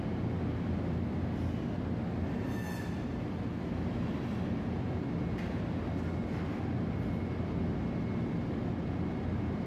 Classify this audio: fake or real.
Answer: real